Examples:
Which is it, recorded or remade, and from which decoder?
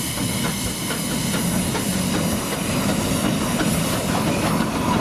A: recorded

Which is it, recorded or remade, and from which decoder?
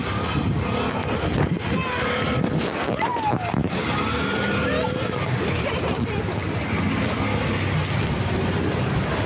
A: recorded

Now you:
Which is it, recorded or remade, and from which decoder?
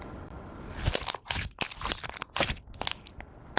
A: recorded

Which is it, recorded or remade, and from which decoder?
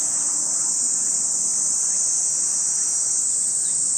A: recorded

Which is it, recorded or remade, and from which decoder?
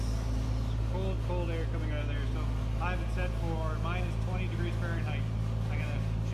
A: recorded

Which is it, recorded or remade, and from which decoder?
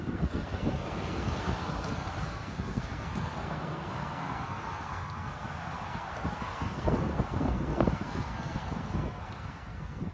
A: remade, codec, SNAC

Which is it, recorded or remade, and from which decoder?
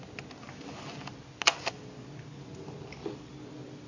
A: recorded